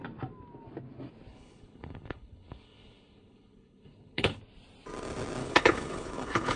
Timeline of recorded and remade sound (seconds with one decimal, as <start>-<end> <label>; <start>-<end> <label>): 0.0-1.3 recorded; 1.3-4.4 remade; 4.4-5.4 recorded; 5.4-6.6 remade